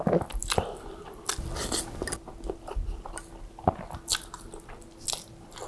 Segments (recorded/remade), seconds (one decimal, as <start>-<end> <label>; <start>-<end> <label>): 0.0-5.7 recorded